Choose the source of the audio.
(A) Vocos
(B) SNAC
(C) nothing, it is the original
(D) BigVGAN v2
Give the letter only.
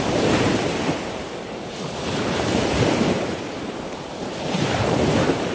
D